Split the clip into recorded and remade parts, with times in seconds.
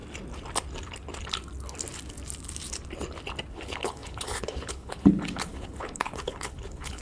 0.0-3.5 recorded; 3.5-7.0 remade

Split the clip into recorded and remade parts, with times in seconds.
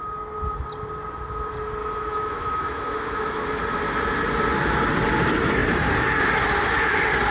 0.0-1.8 recorded; 1.8-3.6 remade; 3.6-7.3 recorded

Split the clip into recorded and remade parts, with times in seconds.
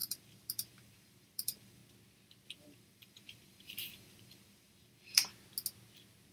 0.0-1.8 remade; 1.8-2.6 recorded; 2.6-5.3 remade; 5.3-6.3 recorded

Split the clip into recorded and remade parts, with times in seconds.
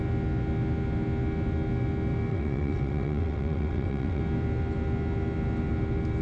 0.0-2.3 recorded; 2.3-4.2 remade; 4.2-6.2 recorded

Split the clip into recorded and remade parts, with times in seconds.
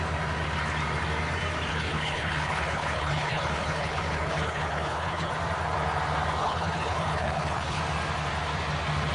0.0-1.7 recorded; 1.7-5.3 remade; 5.3-6.4 recorded; 6.4-7.8 remade; 7.8-9.1 recorded